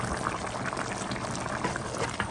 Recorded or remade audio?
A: remade